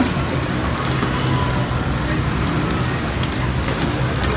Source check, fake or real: real